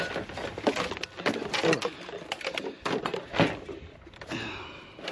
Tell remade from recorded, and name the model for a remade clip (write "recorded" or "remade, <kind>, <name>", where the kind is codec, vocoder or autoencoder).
recorded